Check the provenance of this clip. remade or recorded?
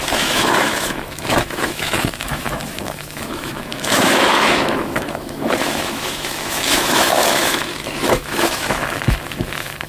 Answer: remade